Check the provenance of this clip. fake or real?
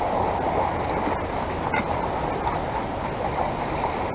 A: real